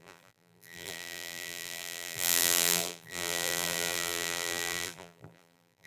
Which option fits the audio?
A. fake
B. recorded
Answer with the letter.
A